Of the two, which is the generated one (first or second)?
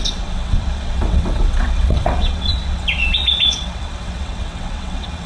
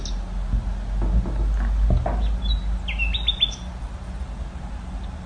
first